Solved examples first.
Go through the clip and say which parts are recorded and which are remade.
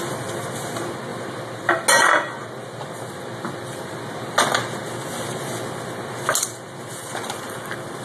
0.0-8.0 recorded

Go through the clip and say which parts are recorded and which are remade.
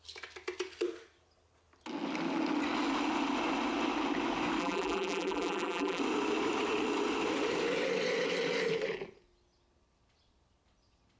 0.0-4.6 recorded; 4.6-6.0 remade; 6.0-11.2 recorded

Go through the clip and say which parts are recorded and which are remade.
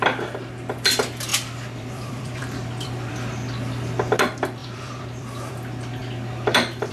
0.0-1.3 recorded; 1.3-3.1 remade; 3.1-4.6 recorded; 4.6-5.5 remade; 5.5-6.9 recorded